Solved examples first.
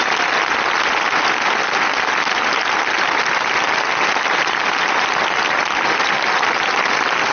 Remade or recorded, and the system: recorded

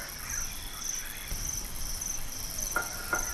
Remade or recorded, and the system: recorded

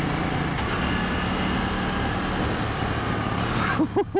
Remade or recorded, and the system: recorded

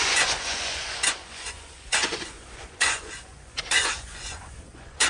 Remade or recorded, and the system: remade, vocoder, Vocos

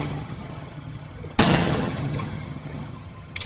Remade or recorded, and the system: remade, vocoder, HiFi-GAN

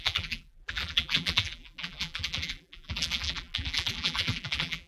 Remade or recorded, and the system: remade, vocoder, BigVGAN v2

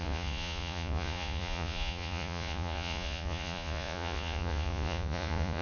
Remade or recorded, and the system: remade, vocoder, Vocos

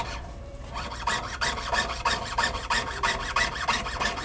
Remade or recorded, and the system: remade, vocoder, BigVGAN v2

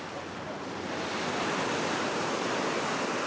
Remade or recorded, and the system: recorded